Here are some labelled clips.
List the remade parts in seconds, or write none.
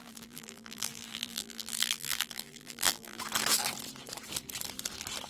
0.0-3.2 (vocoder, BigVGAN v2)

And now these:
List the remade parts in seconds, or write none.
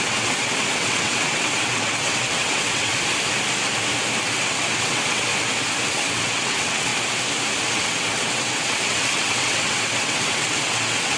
0.0-2.9 (vocoder, WaveNeXt); 4.2-5.3; 5.9-6.9; 7.7-11.2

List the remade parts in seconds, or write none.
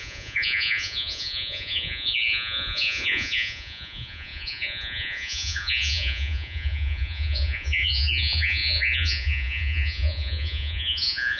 0.0-11.4 (vocoder, Vocos)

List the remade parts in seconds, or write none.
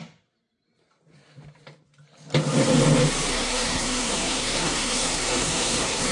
3.3-6.1 (codec, SNAC)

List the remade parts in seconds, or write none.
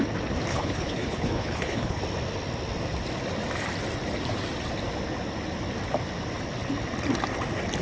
0.5-2.0 (codec, HILCodec)